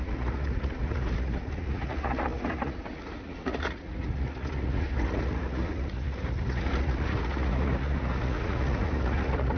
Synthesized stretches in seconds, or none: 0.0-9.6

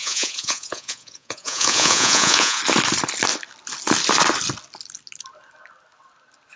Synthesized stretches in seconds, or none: 0.0-2.6

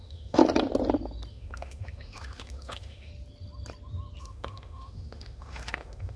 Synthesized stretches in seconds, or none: 0.0-0.4; 1.3-3.1; 4.2-6.2

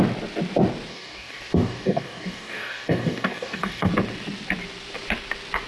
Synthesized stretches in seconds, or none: 0.9-3.9

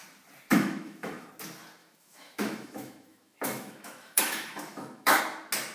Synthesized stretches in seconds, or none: 0.5-1.3; 1.8-5.2

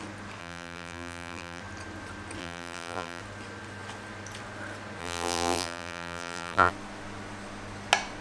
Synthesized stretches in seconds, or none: 0.4-1.6; 2.4-3.2; 5.0-6.7